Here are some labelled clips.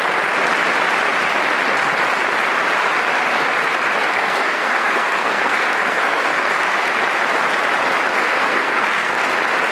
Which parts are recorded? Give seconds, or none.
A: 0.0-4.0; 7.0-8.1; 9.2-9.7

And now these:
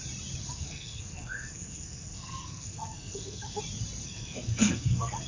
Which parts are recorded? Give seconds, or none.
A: 0.0-0.4; 3.6-4.0

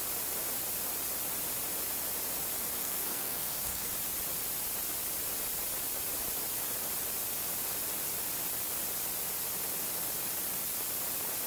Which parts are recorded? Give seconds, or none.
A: 0.0-2.8; 3.9-11.5

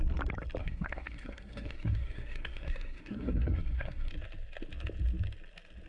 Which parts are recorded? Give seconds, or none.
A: 0.0-0.6; 4.1-5.9

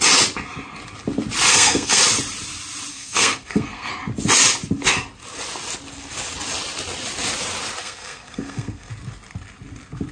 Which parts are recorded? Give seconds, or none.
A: 0.0-1.5; 2.0-2.9; 3.9-7.8; 8.9-10.1

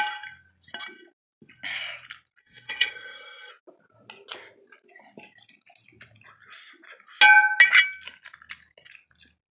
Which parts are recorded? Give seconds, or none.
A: 0.0-2.4; 3.5-9.6

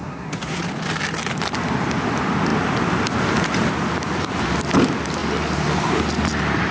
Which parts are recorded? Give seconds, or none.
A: 0.6-6.7